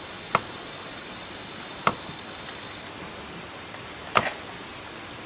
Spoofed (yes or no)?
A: yes